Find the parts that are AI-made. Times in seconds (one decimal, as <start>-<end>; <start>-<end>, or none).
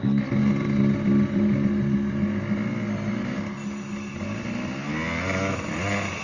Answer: none